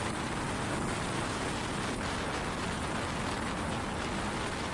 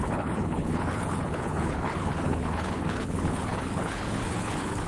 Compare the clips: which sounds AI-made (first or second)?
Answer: second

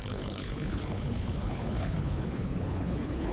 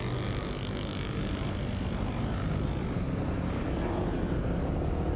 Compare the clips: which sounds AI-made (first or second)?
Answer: first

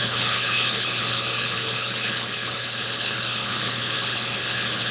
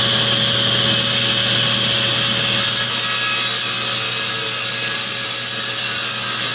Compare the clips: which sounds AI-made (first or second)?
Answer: first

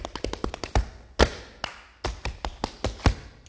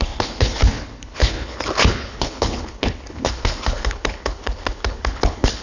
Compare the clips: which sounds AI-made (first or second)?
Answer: second